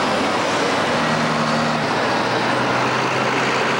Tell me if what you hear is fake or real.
real